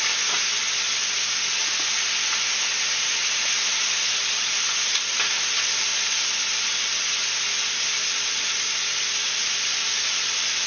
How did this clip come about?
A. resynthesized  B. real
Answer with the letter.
B